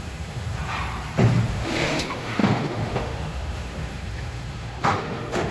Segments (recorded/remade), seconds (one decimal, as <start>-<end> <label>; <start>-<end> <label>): 0.0-0.6 remade; 0.6-1.5 recorded; 1.5-5.5 remade